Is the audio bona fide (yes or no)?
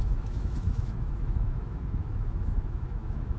no